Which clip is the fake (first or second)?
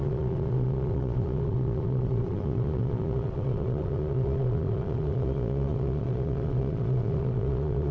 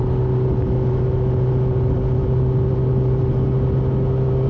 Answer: first